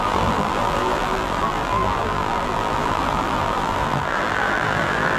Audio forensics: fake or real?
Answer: fake